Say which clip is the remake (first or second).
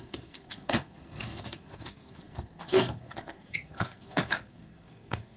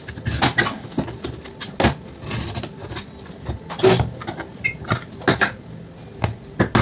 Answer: first